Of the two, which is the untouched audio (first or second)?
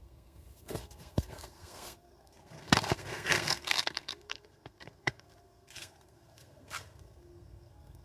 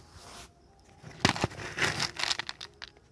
second